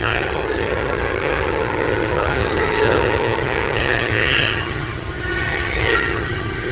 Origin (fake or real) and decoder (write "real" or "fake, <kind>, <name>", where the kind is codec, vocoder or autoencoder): fake, vocoder, HiFi-GAN